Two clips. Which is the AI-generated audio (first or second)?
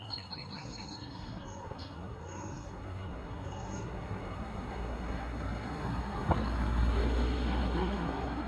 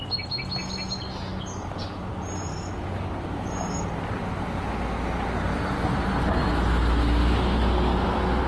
first